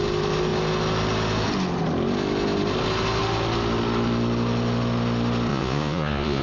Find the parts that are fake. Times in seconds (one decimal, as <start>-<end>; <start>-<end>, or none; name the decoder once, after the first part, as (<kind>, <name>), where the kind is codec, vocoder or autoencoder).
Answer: 5.5-6.4 (vocoder, Vocos)